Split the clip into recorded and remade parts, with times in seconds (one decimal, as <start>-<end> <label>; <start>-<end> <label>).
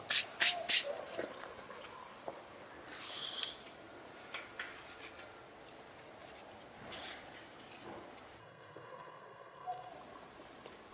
0.0-8.4 recorded; 8.4-9.9 remade; 9.9-10.9 recorded